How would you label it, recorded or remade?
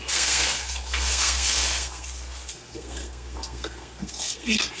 remade